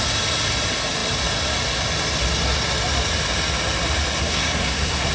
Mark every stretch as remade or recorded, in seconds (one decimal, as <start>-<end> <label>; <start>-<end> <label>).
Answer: 0.0-4.2 recorded; 4.2-5.1 remade